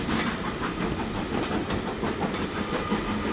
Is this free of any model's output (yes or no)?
yes